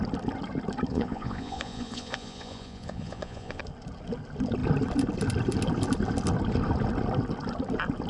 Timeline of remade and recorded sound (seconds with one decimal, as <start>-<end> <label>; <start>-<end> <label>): 0.0-0.9 recorded; 0.9-3.6 remade; 3.6-8.1 recorded